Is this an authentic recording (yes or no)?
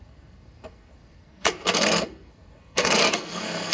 no